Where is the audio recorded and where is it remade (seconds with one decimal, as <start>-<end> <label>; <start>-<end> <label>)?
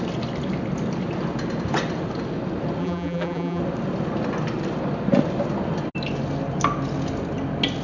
0.0-2.8 recorded; 2.8-3.6 remade; 3.6-7.8 recorded